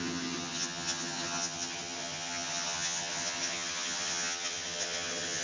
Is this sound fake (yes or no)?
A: yes